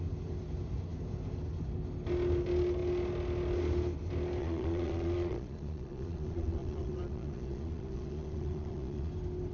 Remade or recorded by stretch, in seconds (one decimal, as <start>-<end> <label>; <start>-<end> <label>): 0.0-4.4 recorded; 4.4-9.1 remade; 9.1-9.5 recorded